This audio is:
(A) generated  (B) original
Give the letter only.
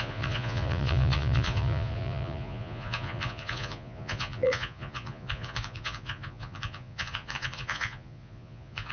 A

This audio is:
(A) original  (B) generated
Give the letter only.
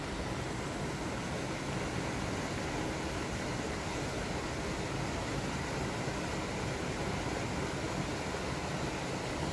A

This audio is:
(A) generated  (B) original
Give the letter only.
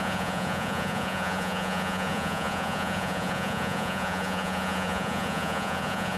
A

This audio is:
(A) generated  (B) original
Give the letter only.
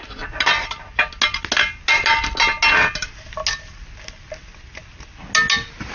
B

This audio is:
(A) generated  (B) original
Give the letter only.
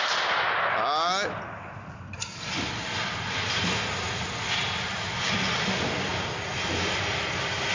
B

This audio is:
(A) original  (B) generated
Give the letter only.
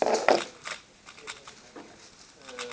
A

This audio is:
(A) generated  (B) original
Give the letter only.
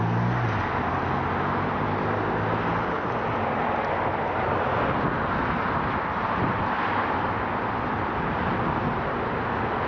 B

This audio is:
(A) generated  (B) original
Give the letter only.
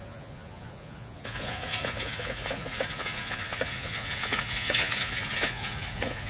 A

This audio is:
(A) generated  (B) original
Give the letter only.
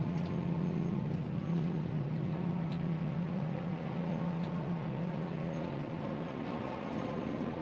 A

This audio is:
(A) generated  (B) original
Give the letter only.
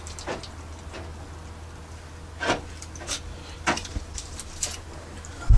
B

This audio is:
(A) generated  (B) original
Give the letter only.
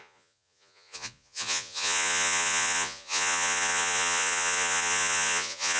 A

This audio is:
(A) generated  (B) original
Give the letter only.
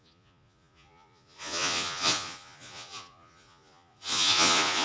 A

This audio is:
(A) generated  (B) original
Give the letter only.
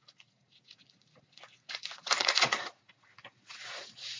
A